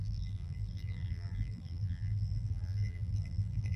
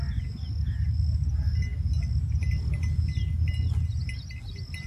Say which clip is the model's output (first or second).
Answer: first